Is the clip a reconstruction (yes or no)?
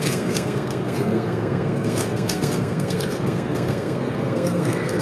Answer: yes